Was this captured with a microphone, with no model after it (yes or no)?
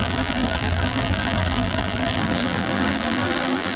no